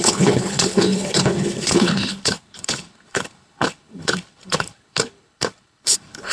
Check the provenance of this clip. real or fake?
fake